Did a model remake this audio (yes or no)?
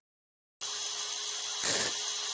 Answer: no